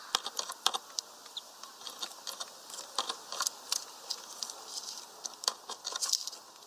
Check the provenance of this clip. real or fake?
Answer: real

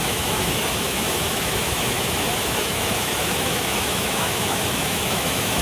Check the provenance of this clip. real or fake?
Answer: fake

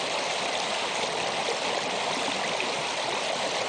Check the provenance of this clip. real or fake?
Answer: real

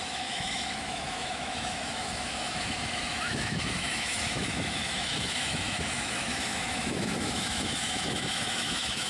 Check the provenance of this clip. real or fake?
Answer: fake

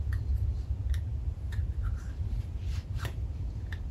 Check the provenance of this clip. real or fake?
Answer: real